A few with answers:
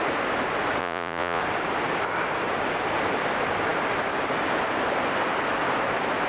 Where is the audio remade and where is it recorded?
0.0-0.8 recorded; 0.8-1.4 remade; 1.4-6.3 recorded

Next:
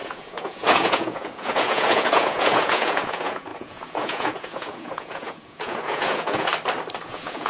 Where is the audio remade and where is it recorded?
0.0-6.5 remade; 6.5-7.0 recorded; 7.0-7.5 remade

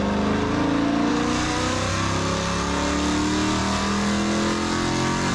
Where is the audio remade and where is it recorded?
0.0-1.1 recorded; 1.1-1.9 remade; 1.9-5.3 recorded

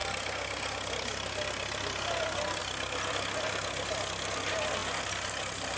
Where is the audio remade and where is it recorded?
0.0-5.8 recorded